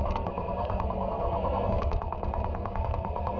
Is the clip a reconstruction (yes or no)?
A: yes